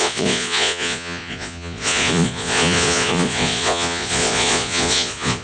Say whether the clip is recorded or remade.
remade